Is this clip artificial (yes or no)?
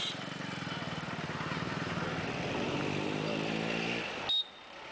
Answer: no